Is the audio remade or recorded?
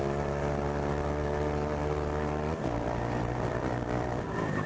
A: remade